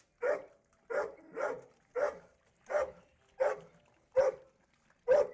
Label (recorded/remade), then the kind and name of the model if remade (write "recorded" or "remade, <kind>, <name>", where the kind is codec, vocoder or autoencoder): recorded